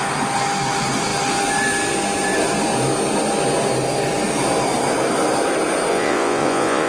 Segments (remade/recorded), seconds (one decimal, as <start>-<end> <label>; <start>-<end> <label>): 0.0-5.9 recorded; 5.9-6.9 remade